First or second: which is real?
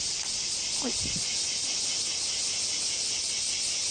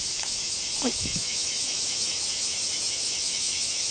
first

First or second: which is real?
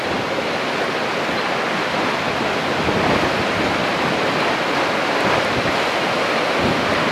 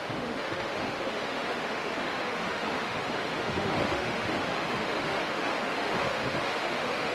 first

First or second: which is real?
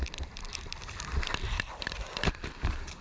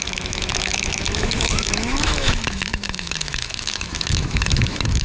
first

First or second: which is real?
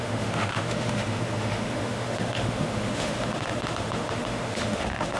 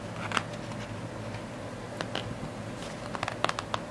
second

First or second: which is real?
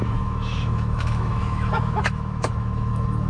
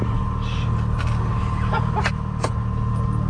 second